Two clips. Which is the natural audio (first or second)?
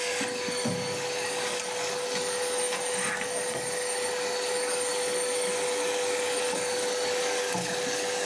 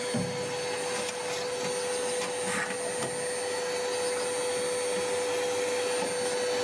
second